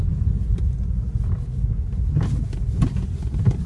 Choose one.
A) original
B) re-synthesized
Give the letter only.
A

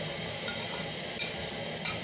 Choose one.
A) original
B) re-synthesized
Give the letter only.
A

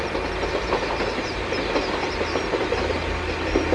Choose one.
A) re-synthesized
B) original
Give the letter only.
B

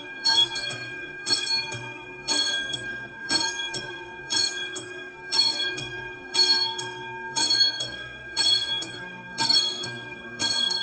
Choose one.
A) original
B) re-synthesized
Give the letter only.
B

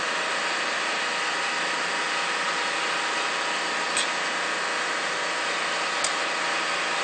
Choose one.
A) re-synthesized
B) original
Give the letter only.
B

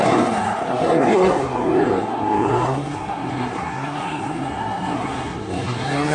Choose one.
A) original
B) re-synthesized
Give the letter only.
B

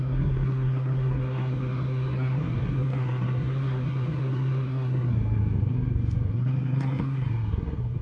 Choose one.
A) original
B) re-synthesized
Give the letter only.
B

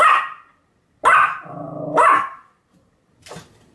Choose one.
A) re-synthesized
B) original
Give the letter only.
B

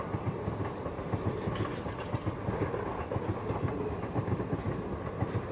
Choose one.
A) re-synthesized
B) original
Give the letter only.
B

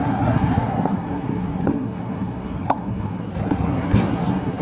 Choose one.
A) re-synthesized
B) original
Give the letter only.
A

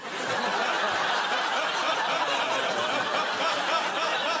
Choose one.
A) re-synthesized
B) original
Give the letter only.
B